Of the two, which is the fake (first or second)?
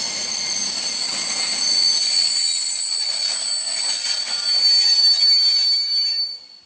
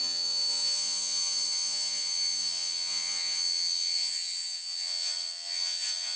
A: second